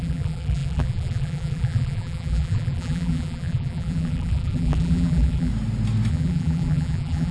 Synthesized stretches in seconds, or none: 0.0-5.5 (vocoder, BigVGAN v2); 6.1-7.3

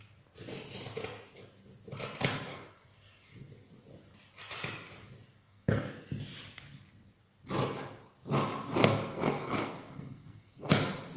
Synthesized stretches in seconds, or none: 2.5-3.5 (codec, SNAC); 5.4-5.9; 8.8-10.7

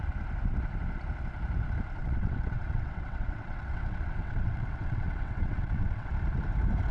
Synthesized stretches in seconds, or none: 2.0-6.1 (vocoder, WaveNeXt)